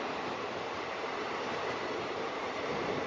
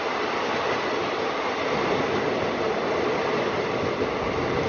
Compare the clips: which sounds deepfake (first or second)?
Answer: first